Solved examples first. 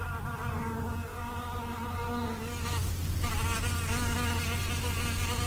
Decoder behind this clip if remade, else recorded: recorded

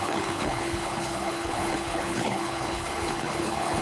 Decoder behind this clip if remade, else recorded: remade, codec, HILCodec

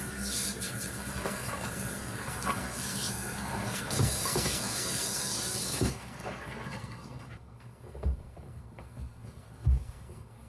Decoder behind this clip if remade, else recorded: remade, codec, SNAC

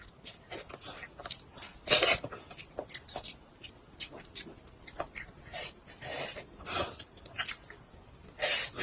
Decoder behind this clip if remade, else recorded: recorded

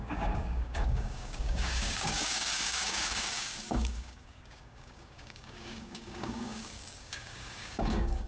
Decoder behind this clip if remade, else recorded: remade, codec, DAC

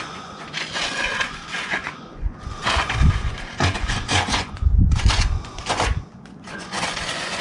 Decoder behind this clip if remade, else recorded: remade, vocoder, Vocos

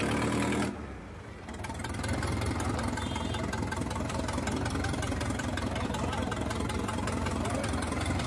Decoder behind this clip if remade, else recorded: remade, vocoder, BigVGAN v2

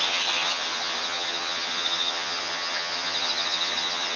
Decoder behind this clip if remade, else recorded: remade, vocoder, HiFi-GAN